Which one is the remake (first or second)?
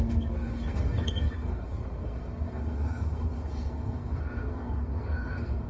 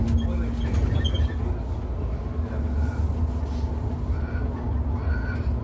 first